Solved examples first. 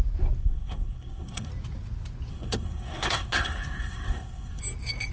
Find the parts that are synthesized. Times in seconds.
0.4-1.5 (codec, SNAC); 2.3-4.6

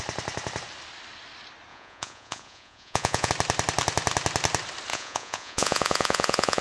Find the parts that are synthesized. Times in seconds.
1.7-3.3 (vocoder, Vocos); 4.9-6.6

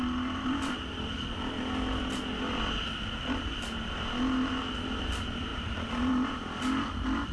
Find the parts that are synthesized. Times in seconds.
none

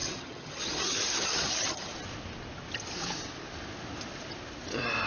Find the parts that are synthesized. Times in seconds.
0.0-1.9 (vocoder, HiFi-GAN)